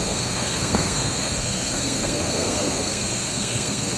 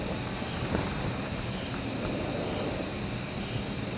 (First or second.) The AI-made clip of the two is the first